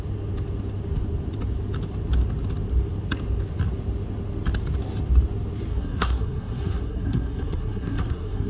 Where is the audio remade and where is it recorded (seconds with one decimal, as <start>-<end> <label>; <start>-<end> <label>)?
0.0-5.7 recorded; 5.7-8.5 remade